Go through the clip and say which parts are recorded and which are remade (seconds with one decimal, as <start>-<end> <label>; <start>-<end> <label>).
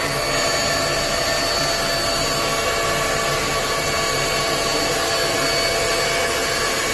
0.0-6.9 recorded